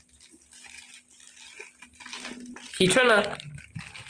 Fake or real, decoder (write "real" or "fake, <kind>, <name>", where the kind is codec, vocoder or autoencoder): real